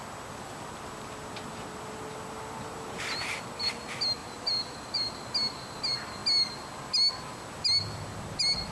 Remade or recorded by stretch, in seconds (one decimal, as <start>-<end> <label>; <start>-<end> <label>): 0.0-4.2 recorded; 4.2-5.1 remade; 5.1-8.7 recorded